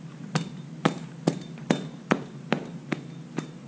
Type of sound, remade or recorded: recorded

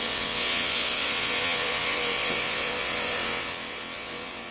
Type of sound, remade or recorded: remade